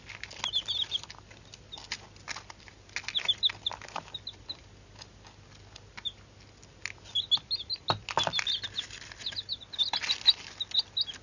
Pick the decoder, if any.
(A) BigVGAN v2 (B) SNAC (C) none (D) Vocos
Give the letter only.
C